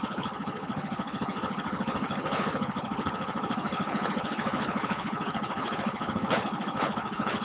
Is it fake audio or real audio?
fake